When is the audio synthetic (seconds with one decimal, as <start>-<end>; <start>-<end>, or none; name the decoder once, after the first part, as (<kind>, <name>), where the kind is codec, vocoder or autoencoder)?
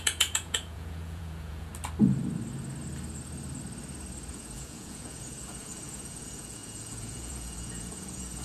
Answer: 0.0-1.7 (vocoder, Vocos); 4.3-8.4